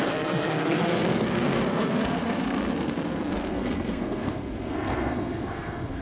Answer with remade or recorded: remade